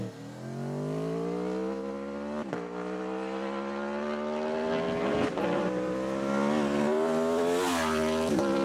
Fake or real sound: real